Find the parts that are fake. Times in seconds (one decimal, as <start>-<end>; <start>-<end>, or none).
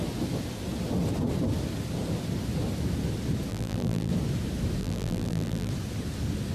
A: 3.5-4.1; 4.8-5.7